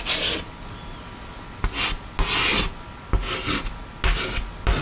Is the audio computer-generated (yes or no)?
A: no